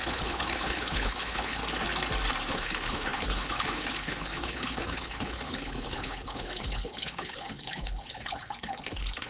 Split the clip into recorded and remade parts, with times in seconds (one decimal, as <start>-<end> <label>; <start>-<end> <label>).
0.0-1.6 remade; 1.6-2.5 recorded; 2.5-9.3 remade